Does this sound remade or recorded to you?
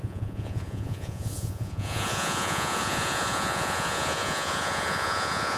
remade